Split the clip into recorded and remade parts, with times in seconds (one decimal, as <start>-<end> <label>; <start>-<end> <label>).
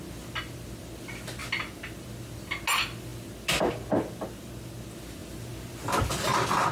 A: 0.0-6.7 recorded